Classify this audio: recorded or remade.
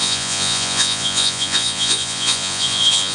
remade